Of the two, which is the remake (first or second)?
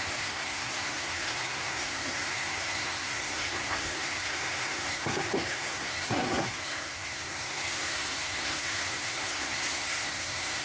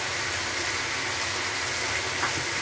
first